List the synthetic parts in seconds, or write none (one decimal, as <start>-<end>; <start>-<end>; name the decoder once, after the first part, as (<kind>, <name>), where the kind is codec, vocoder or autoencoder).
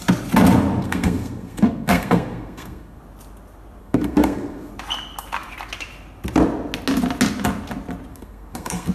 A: 0.8-3.0 (codec, SNAC); 3.8-4.7; 8.1-8.9